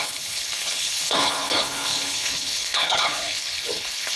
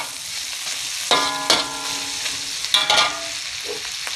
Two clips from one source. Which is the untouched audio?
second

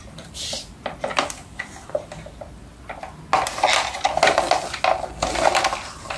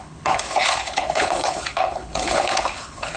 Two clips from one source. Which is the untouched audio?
first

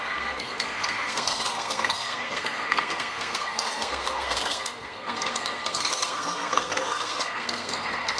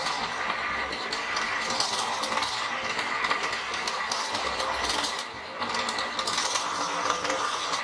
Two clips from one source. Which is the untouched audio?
second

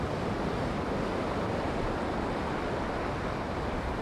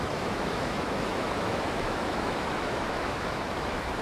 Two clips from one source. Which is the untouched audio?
first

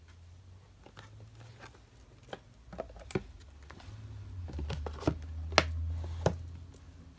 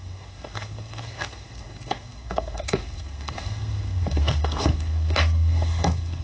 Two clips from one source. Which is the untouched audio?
first